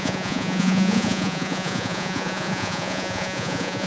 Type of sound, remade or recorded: remade